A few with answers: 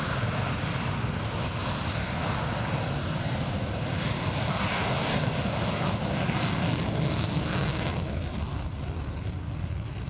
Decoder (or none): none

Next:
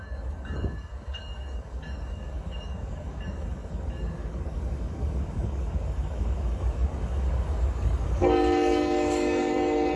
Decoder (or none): codec, DAC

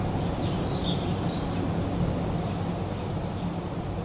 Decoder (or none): none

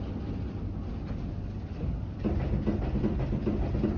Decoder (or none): none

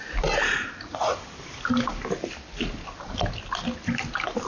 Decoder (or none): none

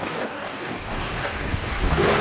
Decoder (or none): codec, DAC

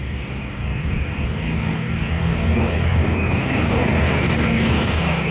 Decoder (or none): codec, DAC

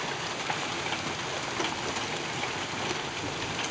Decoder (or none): none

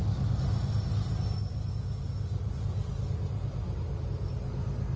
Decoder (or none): none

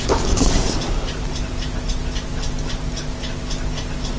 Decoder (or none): none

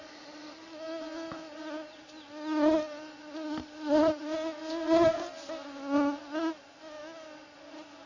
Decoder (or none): none